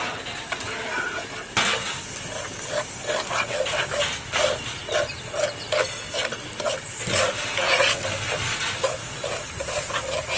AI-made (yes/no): no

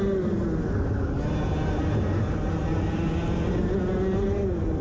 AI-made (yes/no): no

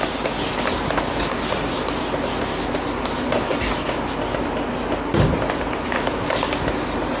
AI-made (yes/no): no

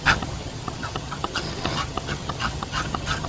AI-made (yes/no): yes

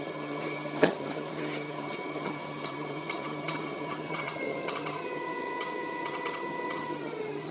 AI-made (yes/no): yes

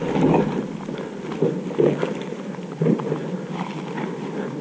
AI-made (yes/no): no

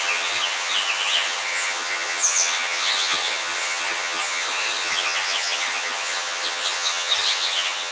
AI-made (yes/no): yes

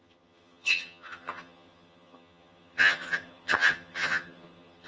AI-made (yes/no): yes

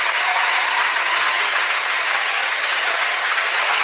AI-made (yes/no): yes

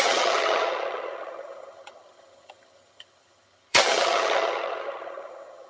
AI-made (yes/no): yes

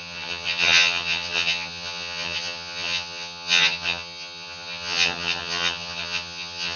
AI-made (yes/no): yes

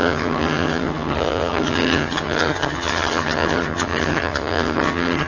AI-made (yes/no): yes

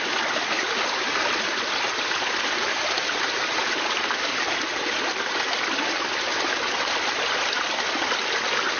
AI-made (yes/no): no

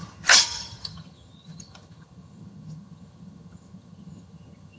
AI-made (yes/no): yes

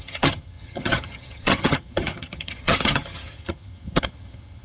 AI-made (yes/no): yes